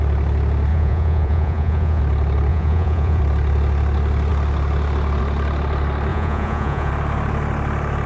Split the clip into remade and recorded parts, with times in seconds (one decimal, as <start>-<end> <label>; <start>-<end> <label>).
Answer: 0.0-0.7 recorded; 0.7-2.0 remade; 2.0-2.5 recorded; 2.5-3.2 remade; 3.2-6.1 recorded; 6.1-6.9 remade; 6.9-8.1 recorded